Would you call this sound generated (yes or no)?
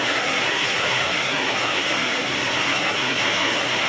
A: yes